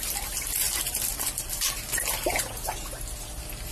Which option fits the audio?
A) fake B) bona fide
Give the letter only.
B